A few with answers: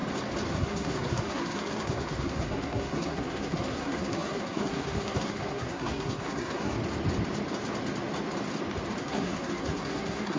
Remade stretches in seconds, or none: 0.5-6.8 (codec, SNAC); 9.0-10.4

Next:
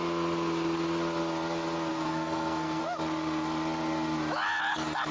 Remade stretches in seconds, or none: 1.9-2.8 (codec, SNAC)